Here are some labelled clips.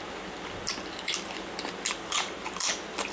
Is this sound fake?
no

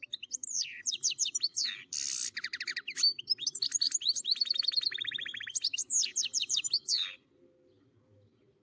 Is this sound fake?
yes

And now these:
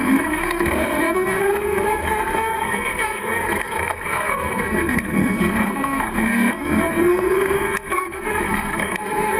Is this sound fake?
yes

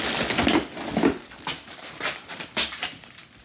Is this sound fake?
no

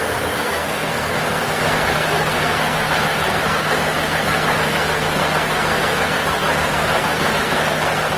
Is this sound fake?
yes